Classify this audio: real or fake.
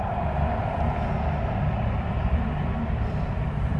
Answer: real